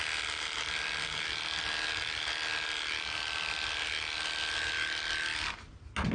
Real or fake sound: real